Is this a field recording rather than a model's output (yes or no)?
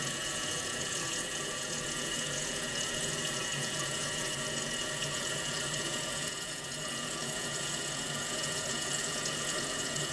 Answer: no